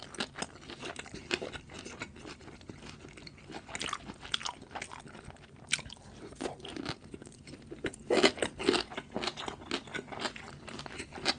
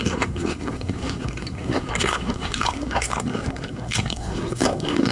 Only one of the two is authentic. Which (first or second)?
first